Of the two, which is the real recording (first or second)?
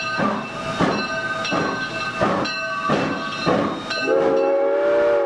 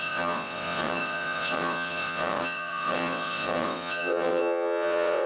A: first